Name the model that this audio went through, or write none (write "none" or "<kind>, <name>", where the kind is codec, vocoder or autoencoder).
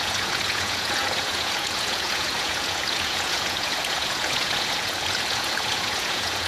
vocoder, Vocos